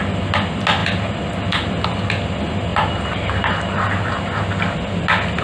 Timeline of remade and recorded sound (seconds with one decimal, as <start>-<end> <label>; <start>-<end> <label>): 0.0-5.4 recorded